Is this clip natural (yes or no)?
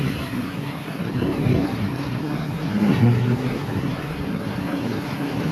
no